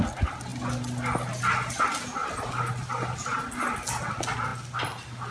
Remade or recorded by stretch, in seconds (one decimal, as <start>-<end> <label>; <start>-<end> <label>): 0.0-5.3 recorded